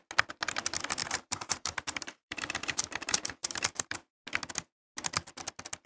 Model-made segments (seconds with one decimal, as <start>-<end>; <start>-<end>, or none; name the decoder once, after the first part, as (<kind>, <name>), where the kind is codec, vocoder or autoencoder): 1.0-4.2 (vocoder, BigVGAN v2)